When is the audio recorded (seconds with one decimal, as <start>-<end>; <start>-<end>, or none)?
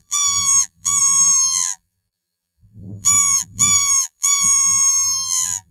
none